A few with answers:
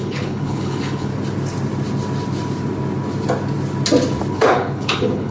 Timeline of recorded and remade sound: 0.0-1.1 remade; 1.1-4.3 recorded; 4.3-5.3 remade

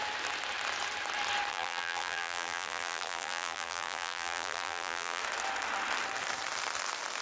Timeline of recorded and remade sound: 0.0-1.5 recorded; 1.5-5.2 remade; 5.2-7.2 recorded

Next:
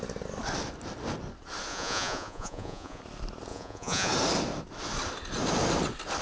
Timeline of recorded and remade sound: 0.0-1.7 recorded; 1.7-3.0 remade; 3.0-3.5 recorded; 3.5-4.1 remade; 4.1-6.2 recorded

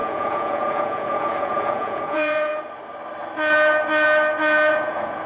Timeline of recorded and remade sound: 0.0-2.5 remade; 2.5-4.7 recorded; 4.7-5.3 remade

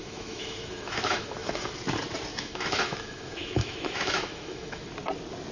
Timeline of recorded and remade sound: 0.0-1.7 remade; 1.7-2.3 recorded; 2.3-4.9 remade; 4.9-5.5 recorded

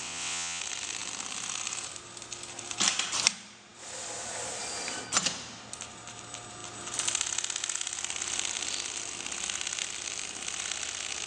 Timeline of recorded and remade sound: 0.0-0.6 remade; 0.6-11.3 recorded